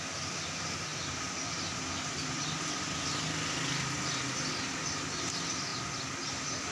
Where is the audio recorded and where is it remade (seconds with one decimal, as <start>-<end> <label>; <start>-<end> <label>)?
0.0-6.7 recorded